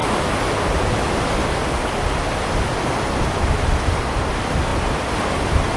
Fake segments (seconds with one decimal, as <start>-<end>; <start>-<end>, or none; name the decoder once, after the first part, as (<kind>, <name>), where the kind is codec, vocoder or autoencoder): none